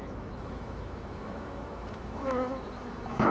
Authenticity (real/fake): fake